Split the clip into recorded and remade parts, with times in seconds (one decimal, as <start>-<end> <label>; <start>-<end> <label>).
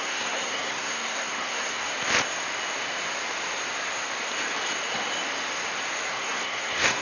0.0-1.9 remade; 1.9-6.1 recorded; 6.1-7.0 remade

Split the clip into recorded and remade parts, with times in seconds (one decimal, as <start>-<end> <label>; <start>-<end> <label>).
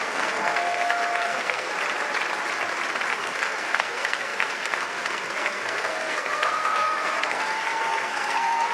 0.0-1.7 remade; 1.7-3.1 recorded; 3.1-8.7 remade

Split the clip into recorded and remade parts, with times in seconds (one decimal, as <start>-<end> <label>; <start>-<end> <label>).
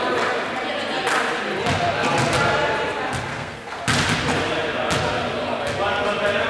0.0-3.3 recorded; 3.3-3.8 remade; 3.8-6.5 recorded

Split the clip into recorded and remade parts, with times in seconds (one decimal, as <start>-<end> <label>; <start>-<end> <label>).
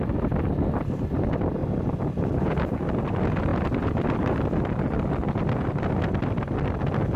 0.0-7.2 recorded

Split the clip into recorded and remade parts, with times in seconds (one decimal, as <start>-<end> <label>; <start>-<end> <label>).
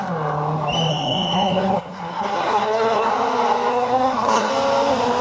0.0-0.9 recorded; 0.9-3.1 remade; 3.1-3.7 recorded; 3.7-4.5 remade; 4.5-5.2 recorded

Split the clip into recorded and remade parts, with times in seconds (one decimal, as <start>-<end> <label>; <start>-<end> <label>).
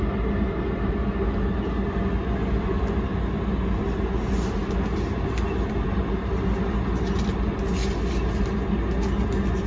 0.0-9.7 recorded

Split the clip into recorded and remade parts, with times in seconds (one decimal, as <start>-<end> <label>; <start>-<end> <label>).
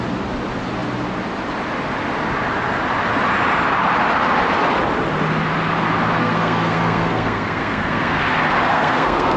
0.0-6.2 recorded; 6.2-8.2 remade; 8.2-8.7 recorded; 8.7-9.4 remade